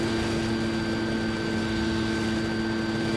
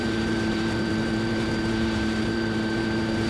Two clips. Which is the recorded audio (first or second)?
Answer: first